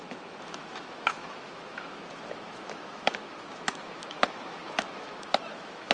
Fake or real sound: fake